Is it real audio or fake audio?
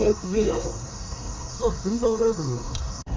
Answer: fake